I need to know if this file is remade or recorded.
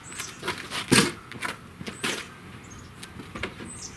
recorded